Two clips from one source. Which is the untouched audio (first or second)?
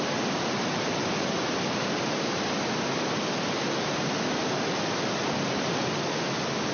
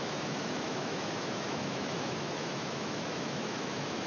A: first